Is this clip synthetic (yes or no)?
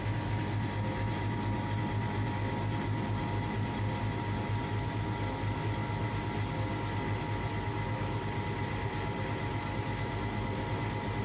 no